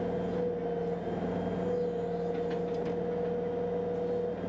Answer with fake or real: real